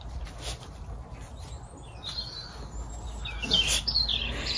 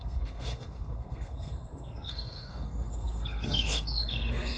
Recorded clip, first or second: first